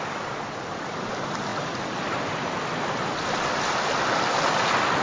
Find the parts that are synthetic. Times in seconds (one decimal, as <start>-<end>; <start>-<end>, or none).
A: 0.0-1.5; 3.7-5.0